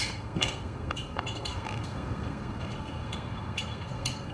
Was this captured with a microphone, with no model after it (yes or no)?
no